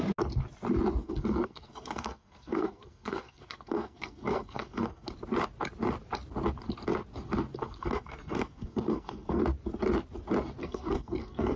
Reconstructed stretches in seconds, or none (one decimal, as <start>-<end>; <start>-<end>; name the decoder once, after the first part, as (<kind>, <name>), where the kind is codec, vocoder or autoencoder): 1.0-5.1 (codec, SNAC); 7.6-9.4; 10.6-11.6